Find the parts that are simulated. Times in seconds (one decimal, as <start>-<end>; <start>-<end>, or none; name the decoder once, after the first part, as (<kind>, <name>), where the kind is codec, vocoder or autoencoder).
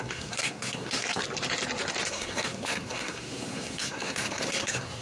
0.0-1.2 (codec, SNAC); 2.1-5.0